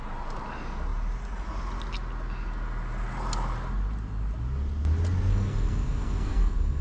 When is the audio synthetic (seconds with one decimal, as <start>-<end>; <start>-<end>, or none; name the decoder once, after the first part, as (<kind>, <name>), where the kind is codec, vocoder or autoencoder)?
5.3-6.8 (codec, SNAC)